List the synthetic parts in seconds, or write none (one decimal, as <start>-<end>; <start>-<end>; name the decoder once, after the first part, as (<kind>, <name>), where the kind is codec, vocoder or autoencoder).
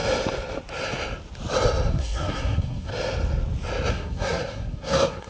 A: 1.9-2.9 (codec, SNAC); 3.9-5.3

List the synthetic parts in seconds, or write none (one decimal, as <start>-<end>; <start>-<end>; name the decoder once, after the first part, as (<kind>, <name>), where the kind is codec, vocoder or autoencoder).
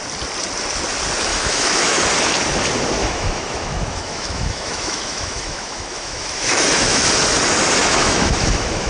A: 1.3-2.0 (autoencoder, DAC-VAE); 3.0-7.1; 7.8-8.9